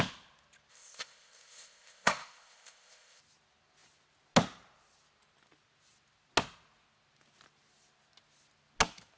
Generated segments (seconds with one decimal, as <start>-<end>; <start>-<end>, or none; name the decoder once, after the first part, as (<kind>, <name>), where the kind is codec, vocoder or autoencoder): 0.7-3.2 (codec, ZipCodec)